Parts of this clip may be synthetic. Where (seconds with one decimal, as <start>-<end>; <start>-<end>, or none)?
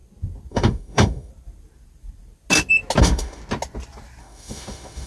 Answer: 0.5-1.3; 3.0-3.4; 4.2-5.1